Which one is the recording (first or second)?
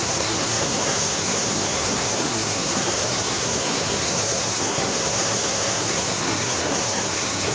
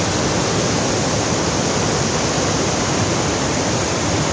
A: second